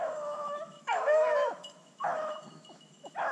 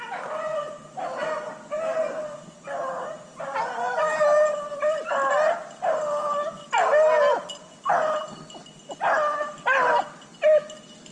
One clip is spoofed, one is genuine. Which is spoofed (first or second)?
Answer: first